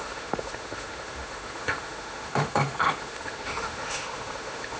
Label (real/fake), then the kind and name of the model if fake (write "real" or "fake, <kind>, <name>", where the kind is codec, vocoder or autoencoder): fake, autoencoder, DAC-VAE